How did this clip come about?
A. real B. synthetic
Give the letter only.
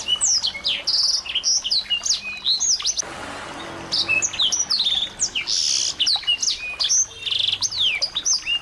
A